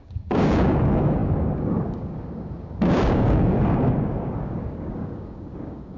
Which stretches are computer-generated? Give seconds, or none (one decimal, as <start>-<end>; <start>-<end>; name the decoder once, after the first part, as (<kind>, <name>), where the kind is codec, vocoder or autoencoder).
0.0-6.0 (codec, DAC)